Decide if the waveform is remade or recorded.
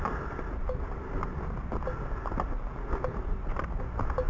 recorded